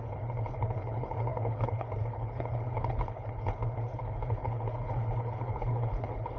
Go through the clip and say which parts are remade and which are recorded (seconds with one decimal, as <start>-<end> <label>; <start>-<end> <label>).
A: 0.0-6.4 remade